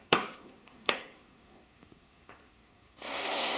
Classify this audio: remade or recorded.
remade